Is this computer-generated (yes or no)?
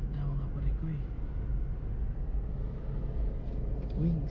no